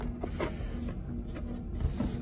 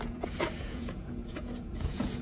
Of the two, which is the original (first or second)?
first